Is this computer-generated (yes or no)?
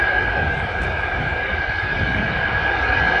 yes